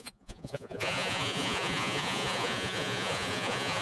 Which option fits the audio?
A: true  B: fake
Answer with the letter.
B